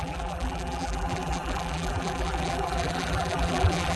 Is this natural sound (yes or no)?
no